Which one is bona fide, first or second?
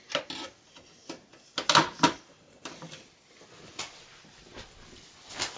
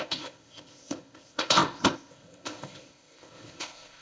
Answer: first